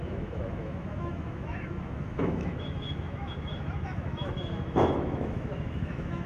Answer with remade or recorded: remade